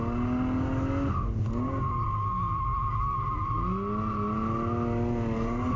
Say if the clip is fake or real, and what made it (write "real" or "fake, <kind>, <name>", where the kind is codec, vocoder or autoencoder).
real